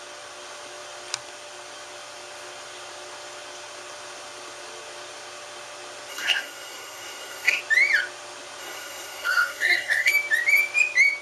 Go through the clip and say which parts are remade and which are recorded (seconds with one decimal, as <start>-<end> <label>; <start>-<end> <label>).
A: 0.0-6.1 recorded; 6.1-7.6 remade; 7.6-8.6 recorded; 8.6-10.1 remade; 10.1-11.2 recorded